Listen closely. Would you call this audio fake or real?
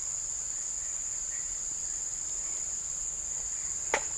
real